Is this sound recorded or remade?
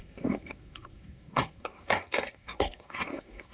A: remade